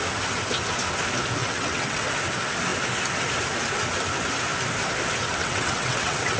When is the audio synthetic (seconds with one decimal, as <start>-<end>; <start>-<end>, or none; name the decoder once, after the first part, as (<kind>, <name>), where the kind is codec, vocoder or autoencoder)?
1.4-2.1 (vocoder, WaveNeXt); 5.4-6.4